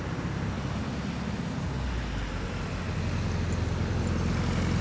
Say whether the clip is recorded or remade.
recorded